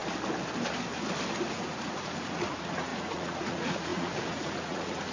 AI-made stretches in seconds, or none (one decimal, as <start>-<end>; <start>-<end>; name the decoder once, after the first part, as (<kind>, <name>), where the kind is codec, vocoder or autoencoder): 1.5-5.1 (vocoder, Vocos)